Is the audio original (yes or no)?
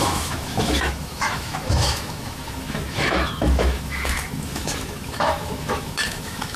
no